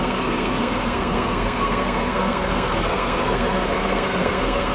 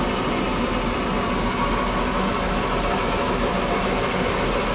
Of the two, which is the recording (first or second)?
second